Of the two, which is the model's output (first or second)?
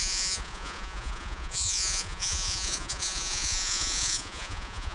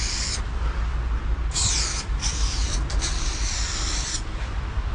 first